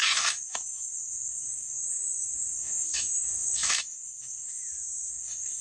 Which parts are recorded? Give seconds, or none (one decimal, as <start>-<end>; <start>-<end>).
4.6-5.1